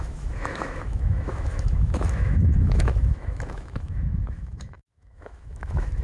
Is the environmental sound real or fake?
fake